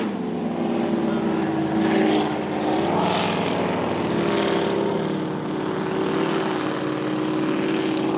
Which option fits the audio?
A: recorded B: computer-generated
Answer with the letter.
A